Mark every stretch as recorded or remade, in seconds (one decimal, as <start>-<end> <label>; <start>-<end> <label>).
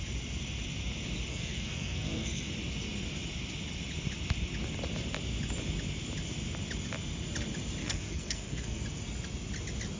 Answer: 0.0-1.3 recorded; 1.3-2.5 remade; 2.5-7.8 recorded; 7.8-8.8 remade; 8.8-10.0 recorded